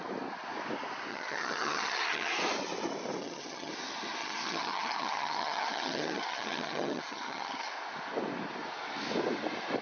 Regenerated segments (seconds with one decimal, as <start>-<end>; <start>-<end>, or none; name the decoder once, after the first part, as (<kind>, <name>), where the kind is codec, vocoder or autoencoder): 1.1-2.3 (vocoder, HiFi-GAN); 3.2-3.7; 4.2-7.7